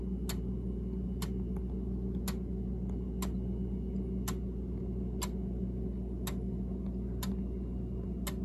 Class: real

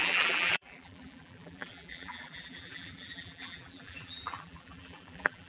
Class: fake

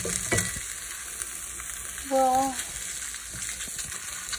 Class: real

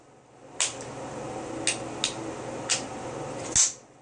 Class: real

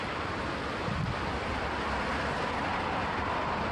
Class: real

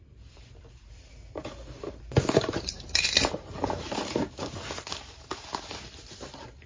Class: fake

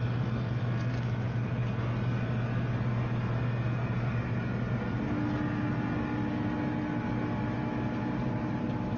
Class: real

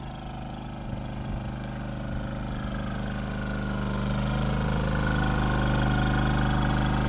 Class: real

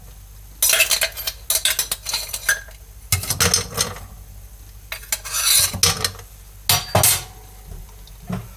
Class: real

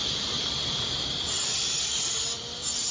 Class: fake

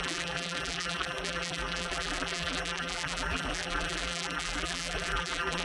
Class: fake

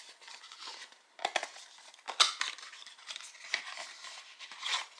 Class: real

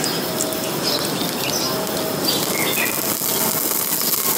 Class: real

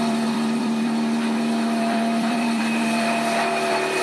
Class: fake